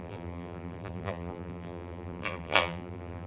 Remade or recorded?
remade